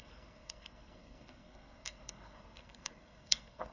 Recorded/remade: remade